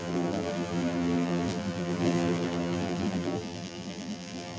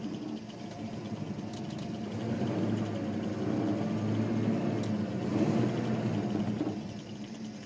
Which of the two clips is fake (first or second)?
first